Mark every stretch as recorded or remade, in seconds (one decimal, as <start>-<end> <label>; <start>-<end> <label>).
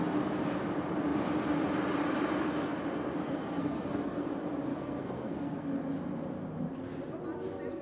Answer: 0.0-3.2 recorded; 3.2-4.3 remade; 4.3-4.7 recorded; 4.7-5.8 remade; 5.8-7.8 recorded